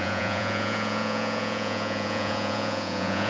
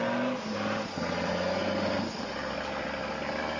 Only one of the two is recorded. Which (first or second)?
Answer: second